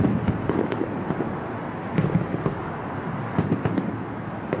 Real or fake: real